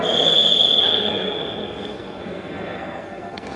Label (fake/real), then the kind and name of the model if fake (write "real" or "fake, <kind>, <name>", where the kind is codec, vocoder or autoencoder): fake, codec, SNAC